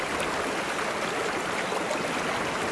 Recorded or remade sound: recorded